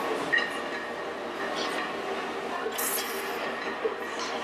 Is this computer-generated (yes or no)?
no